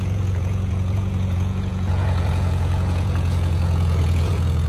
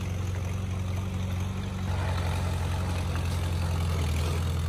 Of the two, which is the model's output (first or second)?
first